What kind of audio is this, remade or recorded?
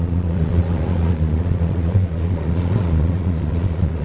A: remade